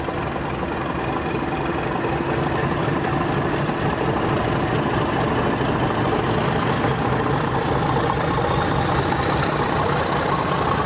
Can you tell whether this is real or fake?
real